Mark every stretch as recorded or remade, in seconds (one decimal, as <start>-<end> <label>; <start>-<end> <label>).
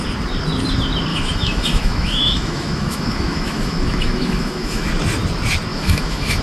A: 0.0-1.1 recorded; 1.1-4.9 remade; 4.9-5.7 recorded; 5.7-6.4 remade